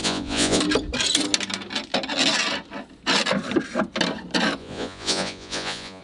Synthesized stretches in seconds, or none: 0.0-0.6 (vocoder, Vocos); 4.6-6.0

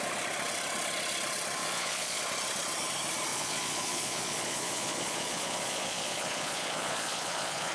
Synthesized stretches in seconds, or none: 1.6-2.2 (vocoder, Vocos); 3.3-7.7

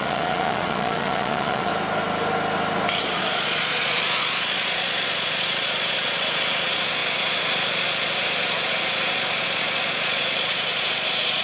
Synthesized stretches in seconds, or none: 0.0-1.7 (vocoder, Vocos); 3.0-11.4

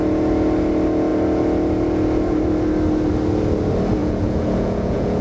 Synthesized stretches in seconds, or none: 4.0-5.2 (vocoder, Vocos)

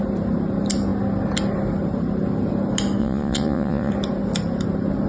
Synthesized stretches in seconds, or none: 3.0-3.9 (vocoder, Vocos)

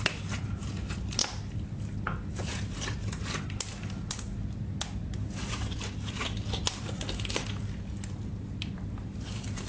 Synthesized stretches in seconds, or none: none

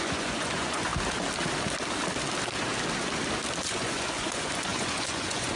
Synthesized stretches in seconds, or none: 0.0-0.9 (vocoder, Vocos); 3.6-5.6